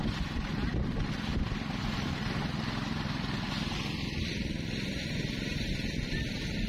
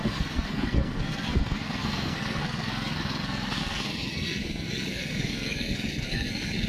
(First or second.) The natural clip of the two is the first